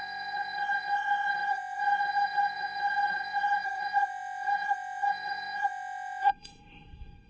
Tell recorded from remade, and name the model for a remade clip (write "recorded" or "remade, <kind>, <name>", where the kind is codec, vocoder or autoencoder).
remade, codec, SNAC